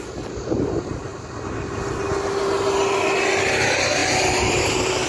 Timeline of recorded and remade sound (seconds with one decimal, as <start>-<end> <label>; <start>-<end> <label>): 0.0-4.0 recorded; 4.0-5.1 remade